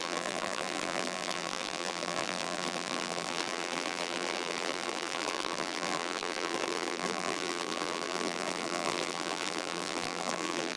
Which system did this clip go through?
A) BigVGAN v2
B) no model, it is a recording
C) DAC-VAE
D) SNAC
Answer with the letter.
A